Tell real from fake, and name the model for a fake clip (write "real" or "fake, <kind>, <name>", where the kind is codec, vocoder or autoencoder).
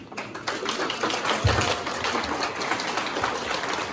real